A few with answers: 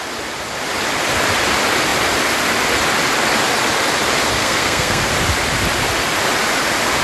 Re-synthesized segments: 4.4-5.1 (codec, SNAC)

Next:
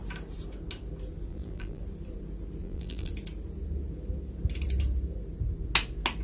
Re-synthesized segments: 1.3-1.8 (vocoder, BigVGAN v2); 2.6-3.1

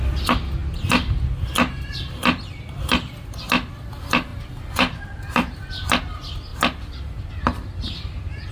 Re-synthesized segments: 4.3-5.7 (vocoder, BigVGAN v2)